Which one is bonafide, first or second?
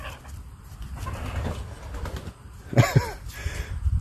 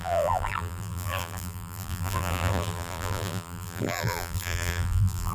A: first